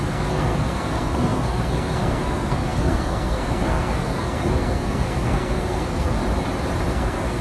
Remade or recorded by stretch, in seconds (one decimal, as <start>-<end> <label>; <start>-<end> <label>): 0.0-6.2 remade; 6.2-6.9 recorded; 6.9-7.4 remade